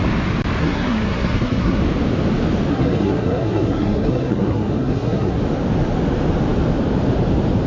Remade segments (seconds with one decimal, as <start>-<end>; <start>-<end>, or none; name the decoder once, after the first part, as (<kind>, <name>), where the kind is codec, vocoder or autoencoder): 0.6-1.8 (codec, SNAC); 2.7-5.4